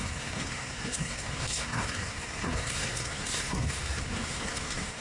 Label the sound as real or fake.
fake